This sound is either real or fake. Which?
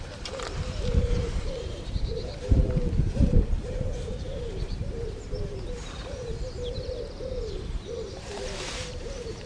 fake